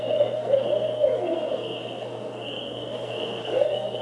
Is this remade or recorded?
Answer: remade